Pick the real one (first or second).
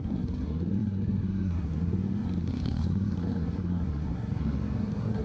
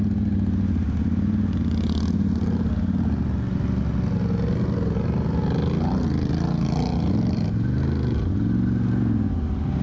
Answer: second